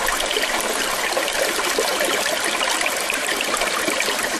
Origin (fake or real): fake